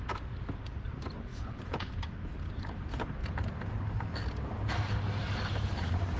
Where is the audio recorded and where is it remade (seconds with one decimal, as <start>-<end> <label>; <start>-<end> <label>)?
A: 0.0-1.3 recorded; 1.3-1.9 remade; 1.9-6.2 recorded

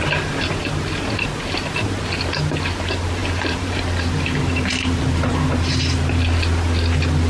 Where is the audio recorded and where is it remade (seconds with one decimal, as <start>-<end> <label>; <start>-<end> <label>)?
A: 0.0-3.2 recorded; 3.2-5.0 remade; 5.0-7.3 recorded

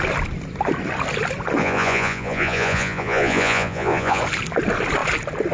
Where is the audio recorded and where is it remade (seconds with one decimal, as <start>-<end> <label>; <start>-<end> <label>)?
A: 0.0-1.6 recorded; 1.6-4.2 remade; 4.2-5.5 recorded

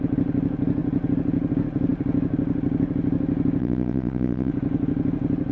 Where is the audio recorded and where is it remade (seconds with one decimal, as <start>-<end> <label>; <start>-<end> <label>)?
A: 0.0-3.6 recorded; 3.6-4.5 remade; 4.5-5.5 recorded

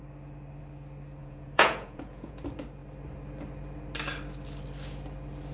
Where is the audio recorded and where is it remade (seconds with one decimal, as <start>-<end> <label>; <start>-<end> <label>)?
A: 0.0-1.2 recorded; 1.2-2.4 remade; 2.4-5.5 recorded